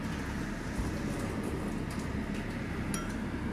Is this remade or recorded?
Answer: recorded